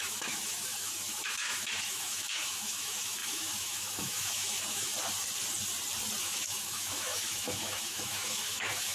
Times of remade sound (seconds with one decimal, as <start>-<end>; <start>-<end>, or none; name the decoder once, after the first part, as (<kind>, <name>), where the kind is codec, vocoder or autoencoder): 0.0-4.9 (autoencoder, DAC-VAE); 6.2-8.9